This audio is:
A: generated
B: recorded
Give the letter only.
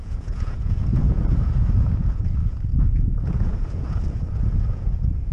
A